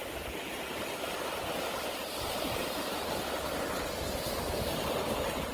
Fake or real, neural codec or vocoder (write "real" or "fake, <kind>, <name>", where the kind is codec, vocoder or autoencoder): real